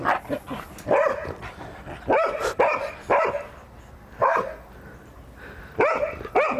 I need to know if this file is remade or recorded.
recorded